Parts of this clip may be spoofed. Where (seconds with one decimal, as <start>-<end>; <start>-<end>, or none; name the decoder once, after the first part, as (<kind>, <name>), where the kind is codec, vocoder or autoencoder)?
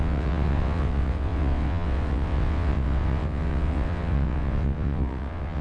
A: 0.0-5.6 (vocoder, WaveNeXt)